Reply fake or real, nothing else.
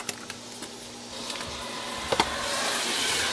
real